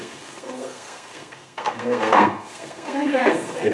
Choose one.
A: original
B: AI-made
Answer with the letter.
B